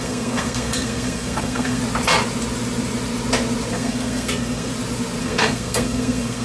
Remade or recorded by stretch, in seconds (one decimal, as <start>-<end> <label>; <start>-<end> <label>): 0.0-1.8 remade; 1.8-3.7 recorded; 3.7-4.7 remade; 4.7-5.2 recorded; 5.2-6.4 remade